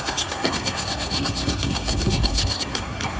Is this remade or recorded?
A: remade